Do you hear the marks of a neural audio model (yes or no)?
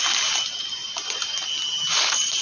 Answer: no